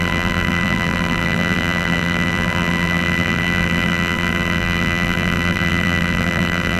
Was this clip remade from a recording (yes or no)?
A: yes